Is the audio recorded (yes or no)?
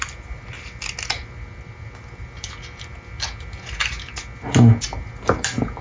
yes